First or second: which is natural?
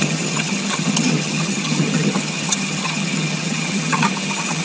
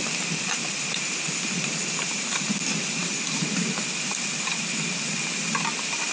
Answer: second